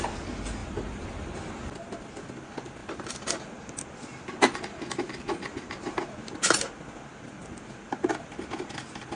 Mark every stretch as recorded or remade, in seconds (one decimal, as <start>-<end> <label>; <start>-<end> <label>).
0.0-0.6 recorded; 0.6-2.1 remade; 2.1-9.2 recorded